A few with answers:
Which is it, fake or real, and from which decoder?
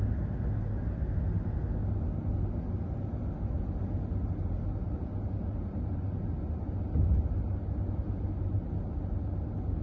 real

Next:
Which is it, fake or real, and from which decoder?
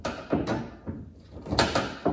real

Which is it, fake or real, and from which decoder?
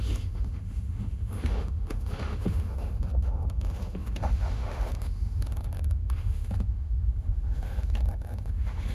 fake, autoencoder, DAC-VAE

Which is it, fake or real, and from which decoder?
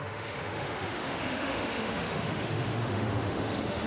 fake, autoencoder, DAC-VAE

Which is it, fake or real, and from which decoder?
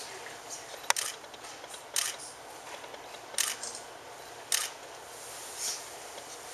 real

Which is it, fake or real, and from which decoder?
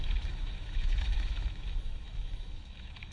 fake, autoencoder, DAC-VAE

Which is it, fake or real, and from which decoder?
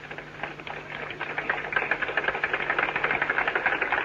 real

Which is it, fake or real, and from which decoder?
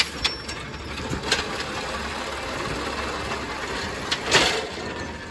real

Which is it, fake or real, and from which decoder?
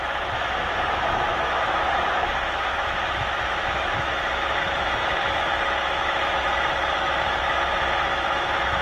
fake, autoencoder, DAC-VAE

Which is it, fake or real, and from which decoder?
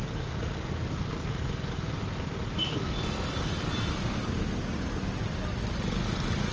real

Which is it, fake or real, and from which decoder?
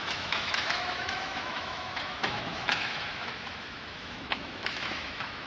fake, autoencoder, DAC-VAE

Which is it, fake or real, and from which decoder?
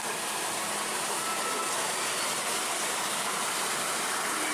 real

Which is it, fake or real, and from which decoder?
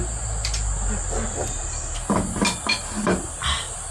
real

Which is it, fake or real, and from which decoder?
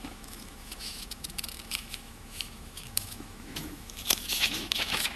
fake, autoencoder, DAC-VAE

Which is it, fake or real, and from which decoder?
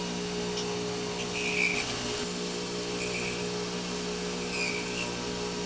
real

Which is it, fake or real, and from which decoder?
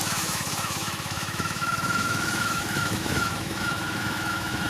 fake, autoencoder, DAC-VAE